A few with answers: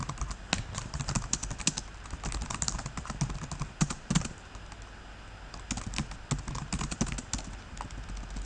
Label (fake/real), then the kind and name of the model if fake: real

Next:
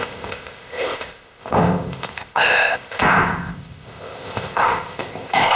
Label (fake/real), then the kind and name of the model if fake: fake, codec, ZipCodec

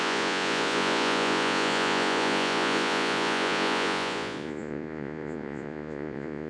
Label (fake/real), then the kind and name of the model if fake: fake, vocoder, Vocos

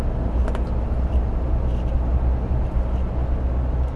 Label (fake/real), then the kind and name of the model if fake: real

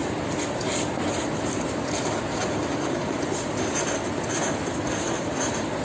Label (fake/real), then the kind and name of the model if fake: real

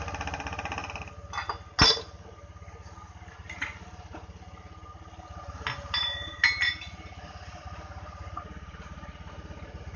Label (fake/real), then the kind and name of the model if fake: real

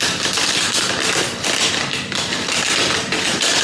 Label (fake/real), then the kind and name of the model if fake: real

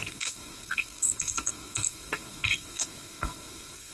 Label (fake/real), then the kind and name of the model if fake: fake, codec, SNAC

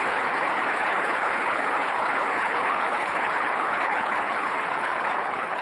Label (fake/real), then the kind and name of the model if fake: fake, codec, HILCodec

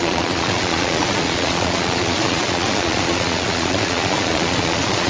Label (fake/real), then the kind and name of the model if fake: fake, vocoder, Vocos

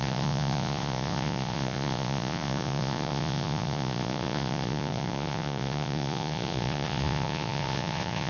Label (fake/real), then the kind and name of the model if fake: fake, vocoder, Vocos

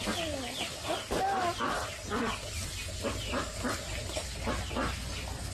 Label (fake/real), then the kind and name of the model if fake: real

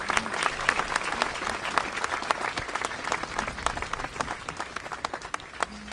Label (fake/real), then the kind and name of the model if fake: real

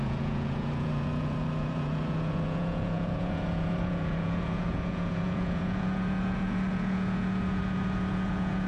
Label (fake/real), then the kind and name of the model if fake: fake, vocoder, Vocos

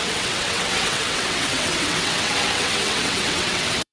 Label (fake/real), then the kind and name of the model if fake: fake, vocoder, WaveNeXt